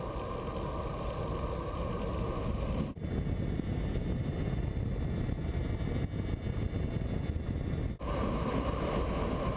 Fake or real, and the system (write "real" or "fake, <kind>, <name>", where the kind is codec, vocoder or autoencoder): real